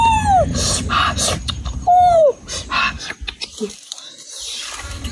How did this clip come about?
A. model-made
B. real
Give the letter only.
A